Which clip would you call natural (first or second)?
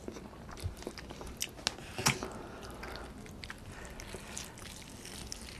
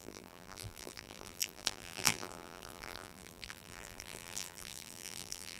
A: first